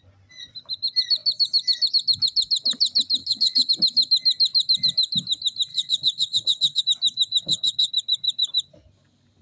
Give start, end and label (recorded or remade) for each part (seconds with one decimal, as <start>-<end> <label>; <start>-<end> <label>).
0.0-3.2 recorded; 3.2-3.7 remade; 3.7-5.7 recorded; 5.7-6.8 remade; 6.8-7.4 recorded; 7.4-7.9 remade; 7.9-9.4 recorded